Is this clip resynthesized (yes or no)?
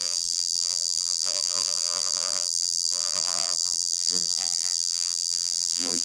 yes